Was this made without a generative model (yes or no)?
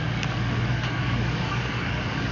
no